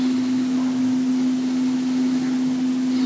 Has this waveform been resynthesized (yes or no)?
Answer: no